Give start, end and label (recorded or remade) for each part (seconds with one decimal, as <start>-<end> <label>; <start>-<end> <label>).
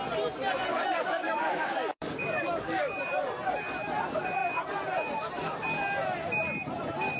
0.0-0.7 recorded; 0.7-3.0 remade; 3.0-7.2 recorded